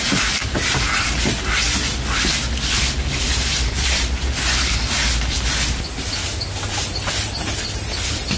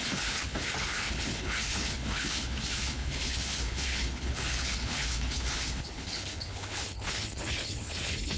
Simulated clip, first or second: second